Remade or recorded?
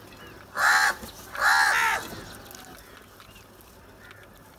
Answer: recorded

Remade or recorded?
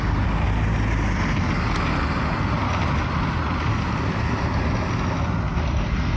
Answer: recorded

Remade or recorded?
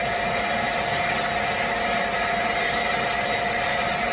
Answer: recorded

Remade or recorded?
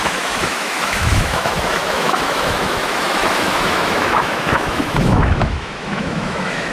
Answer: remade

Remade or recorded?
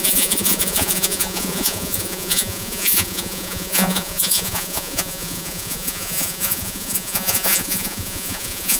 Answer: remade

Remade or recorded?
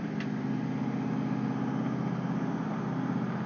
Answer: recorded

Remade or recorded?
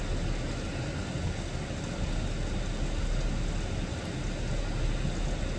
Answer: recorded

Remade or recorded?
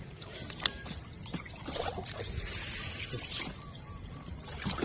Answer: remade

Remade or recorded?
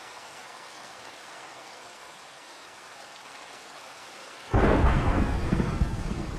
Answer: remade